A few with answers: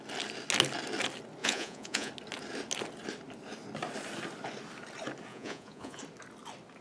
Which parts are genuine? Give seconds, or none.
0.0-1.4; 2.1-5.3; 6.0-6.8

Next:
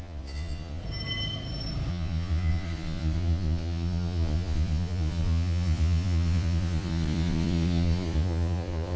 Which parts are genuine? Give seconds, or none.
0.8-1.9